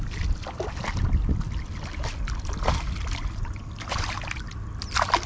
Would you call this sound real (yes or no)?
yes